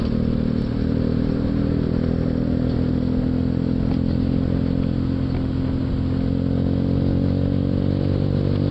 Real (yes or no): yes